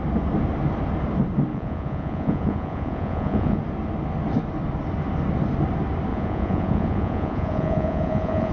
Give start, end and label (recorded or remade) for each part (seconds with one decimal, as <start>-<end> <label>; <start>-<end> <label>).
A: 0.0-1.5 recorded; 1.5-3.6 remade; 3.6-6.1 recorded; 6.1-8.5 remade

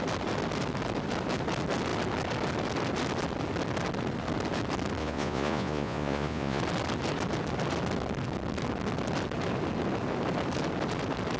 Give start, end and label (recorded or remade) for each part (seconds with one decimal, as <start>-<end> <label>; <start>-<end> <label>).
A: 0.0-5.0 recorded; 5.0-6.6 remade; 6.6-11.4 recorded